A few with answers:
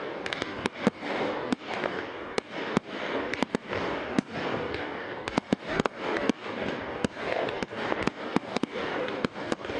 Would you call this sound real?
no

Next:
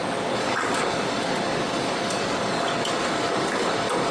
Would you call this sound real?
no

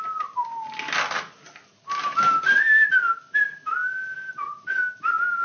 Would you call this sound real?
yes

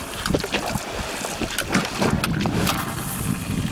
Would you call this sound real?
yes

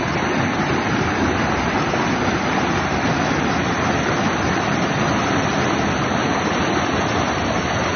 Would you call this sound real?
yes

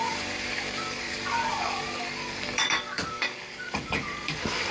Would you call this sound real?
no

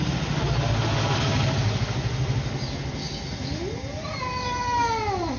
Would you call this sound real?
yes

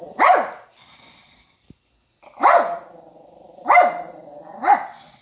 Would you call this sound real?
yes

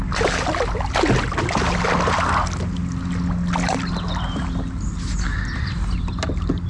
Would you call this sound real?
yes